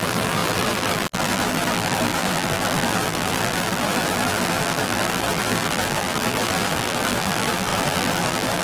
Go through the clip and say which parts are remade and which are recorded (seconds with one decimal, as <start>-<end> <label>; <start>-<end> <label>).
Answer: 0.0-8.6 remade